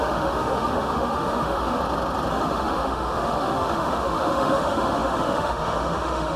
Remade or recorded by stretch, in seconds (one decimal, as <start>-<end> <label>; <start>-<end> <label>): 0.0-1.8 remade; 1.8-2.3 recorded; 2.3-6.4 remade